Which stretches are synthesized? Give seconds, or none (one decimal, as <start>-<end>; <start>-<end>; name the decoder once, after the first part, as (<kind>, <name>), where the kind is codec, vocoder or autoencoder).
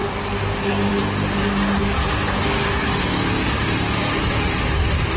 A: none